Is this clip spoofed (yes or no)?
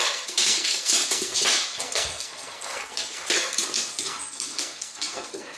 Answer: yes